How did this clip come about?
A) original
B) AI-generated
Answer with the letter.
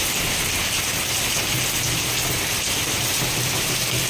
A